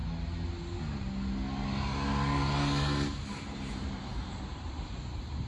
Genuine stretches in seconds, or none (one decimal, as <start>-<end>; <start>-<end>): 0.0-3.3